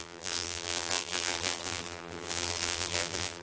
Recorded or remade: remade